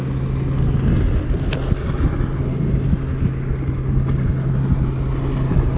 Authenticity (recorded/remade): recorded